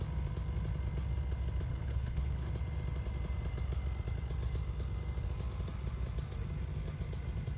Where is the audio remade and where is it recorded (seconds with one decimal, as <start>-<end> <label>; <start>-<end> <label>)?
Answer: 0.0-1.7 recorded; 1.7-2.5 remade; 2.5-7.6 recorded